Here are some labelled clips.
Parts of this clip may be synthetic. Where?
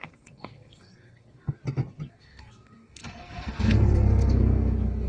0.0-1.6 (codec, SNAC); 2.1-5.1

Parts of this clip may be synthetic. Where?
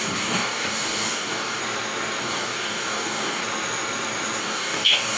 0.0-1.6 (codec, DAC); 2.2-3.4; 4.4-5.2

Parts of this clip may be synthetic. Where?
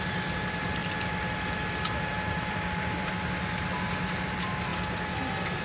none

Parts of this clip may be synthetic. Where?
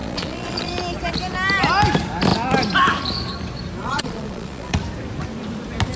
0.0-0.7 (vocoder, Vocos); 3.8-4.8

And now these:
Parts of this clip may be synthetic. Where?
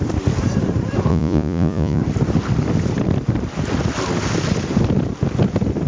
1.1-2.0 (vocoder, Vocos)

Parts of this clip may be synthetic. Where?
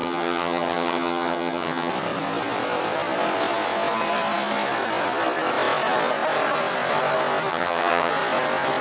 0.0-1.9 (vocoder, HiFi-GAN); 7.5-8.1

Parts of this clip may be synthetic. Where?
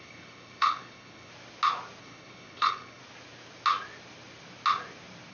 0.0-1.3 (codec, HILCodec); 2.0-3.0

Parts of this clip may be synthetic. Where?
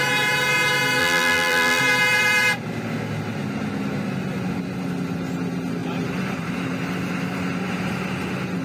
1.0-1.8 (vocoder, BigVGAN v2)